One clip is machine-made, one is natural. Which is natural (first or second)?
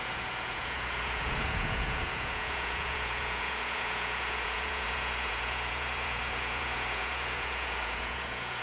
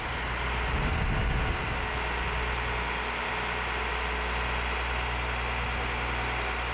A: second